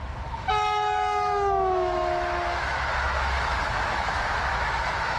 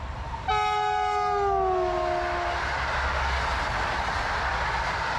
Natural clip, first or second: second